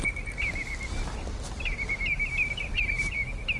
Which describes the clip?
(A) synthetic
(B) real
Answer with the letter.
B